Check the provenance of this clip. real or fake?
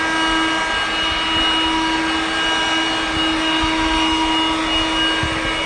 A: real